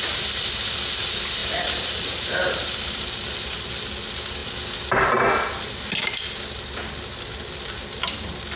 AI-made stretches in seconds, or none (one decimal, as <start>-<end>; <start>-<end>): 1.4-3.1